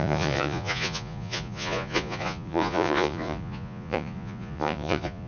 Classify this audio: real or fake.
fake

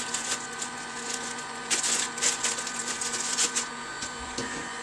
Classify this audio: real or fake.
fake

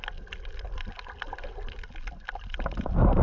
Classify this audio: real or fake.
real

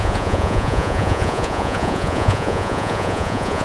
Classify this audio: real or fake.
fake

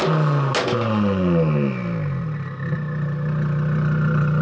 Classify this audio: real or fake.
real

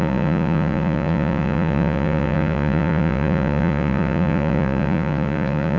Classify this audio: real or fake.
fake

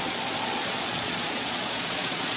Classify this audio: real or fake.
fake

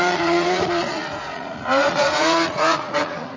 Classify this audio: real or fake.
fake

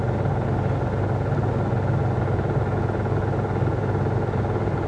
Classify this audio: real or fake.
real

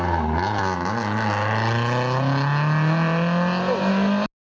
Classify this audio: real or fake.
real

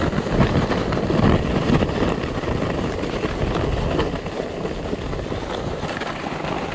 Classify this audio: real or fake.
real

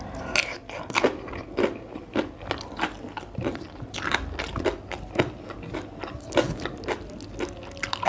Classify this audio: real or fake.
real